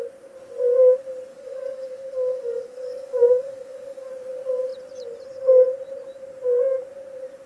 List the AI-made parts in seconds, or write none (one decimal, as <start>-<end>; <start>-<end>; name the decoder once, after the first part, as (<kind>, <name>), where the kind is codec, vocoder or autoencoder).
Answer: 1.3-4.1 (codec, DAC)